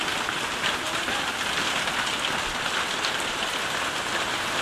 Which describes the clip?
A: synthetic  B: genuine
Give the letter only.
B